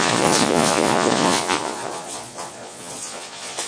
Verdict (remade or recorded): remade